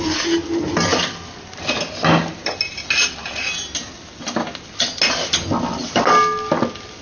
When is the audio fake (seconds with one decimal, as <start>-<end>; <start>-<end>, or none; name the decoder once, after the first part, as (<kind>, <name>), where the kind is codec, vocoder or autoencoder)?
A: none